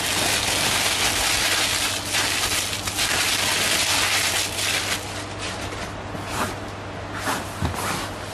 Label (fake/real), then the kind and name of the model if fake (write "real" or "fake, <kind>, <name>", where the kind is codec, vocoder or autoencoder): real